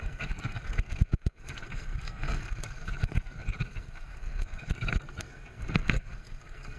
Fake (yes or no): yes